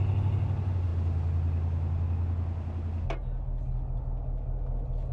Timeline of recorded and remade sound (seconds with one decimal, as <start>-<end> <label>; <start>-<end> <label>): 0.0-5.1 recorded